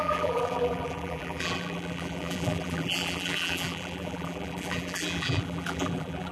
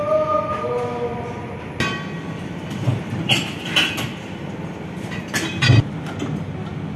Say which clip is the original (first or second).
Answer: second